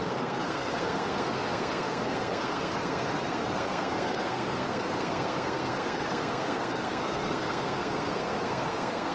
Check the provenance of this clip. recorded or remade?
remade